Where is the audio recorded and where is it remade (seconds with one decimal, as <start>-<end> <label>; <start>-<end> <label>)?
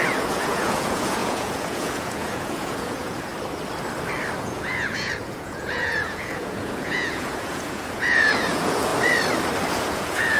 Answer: 0.0-3.3 remade; 3.3-4.4 recorded; 4.4-8.9 remade; 8.9-9.7 recorded; 9.7-10.4 remade